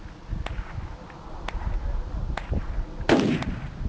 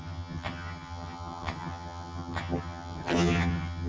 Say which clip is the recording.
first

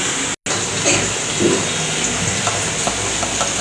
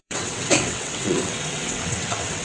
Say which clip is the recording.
first